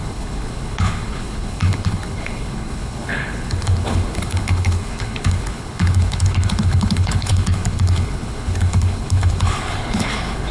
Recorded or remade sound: remade